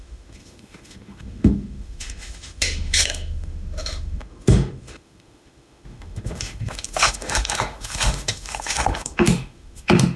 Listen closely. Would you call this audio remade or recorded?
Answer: remade